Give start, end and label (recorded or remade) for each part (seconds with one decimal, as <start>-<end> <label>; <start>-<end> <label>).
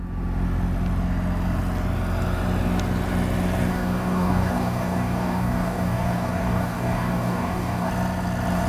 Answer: 0.0-3.7 recorded; 3.7-7.9 remade; 7.9-8.7 recorded